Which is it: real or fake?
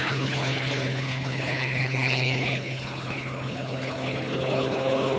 fake